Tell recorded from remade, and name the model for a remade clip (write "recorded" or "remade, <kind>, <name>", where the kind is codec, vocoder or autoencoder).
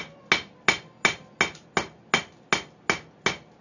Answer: recorded